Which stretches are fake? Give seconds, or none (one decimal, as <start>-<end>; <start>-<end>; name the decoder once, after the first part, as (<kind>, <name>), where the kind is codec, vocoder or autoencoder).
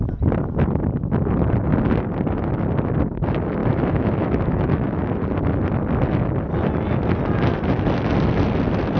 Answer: 3.6-5.0 (autoencoder, DAC-VAE)